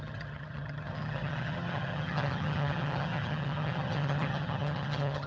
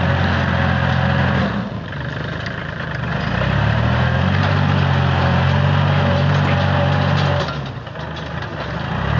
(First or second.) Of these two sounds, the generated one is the first